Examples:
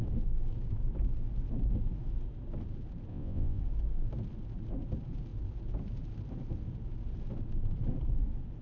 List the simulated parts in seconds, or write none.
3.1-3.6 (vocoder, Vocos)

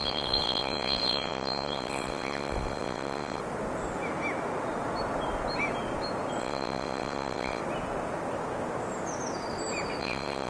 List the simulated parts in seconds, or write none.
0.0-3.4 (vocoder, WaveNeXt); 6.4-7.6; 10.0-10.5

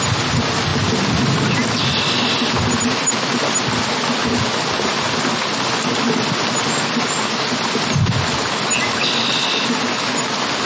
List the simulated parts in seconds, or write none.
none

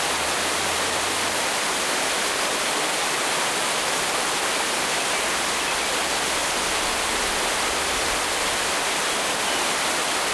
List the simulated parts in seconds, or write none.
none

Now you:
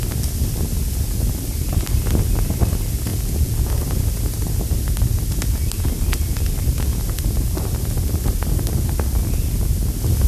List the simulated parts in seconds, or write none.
3.1-3.7 (vocoder, Vocos)